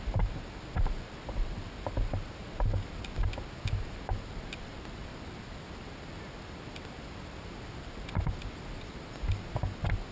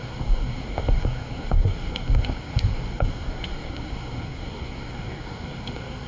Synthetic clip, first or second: second